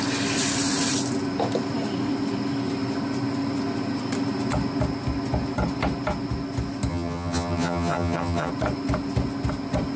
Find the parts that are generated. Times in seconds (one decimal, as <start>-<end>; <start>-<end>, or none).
6.9-8.5

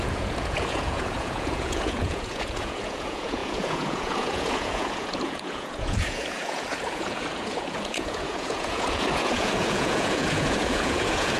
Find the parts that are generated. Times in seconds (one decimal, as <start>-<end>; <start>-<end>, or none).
0.0-11.4